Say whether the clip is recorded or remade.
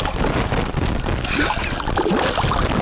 recorded